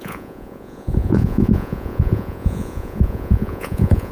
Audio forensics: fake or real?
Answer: fake